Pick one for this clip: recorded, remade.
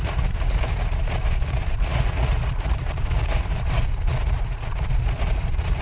remade